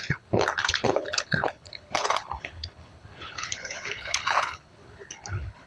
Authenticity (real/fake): fake